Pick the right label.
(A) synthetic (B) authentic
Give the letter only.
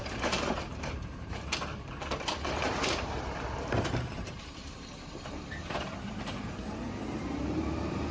A